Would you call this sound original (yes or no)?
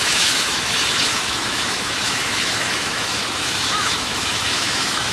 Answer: no